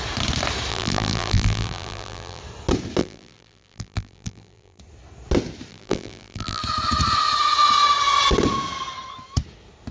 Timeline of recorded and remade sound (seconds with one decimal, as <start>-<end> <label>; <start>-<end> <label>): 0.0-0.7 recorded; 0.7-2.4 remade; 2.4-3.0 recorded; 3.0-4.8 remade; 4.8-5.7 recorded; 5.7-6.6 remade; 6.6-9.9 recorded